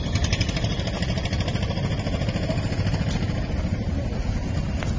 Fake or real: real